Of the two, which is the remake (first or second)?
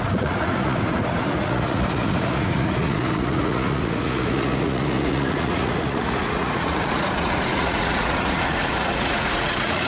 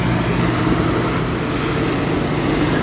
first